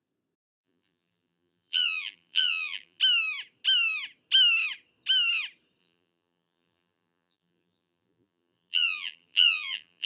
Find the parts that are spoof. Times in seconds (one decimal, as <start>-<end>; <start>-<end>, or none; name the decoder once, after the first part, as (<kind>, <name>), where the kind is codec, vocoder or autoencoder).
0.6-3.0 (vocoder, BigVGAN v2); 5.8-10.1